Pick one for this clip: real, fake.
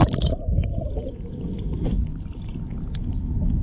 real